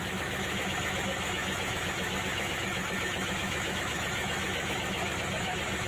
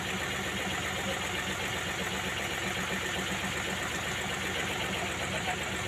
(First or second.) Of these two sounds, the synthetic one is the first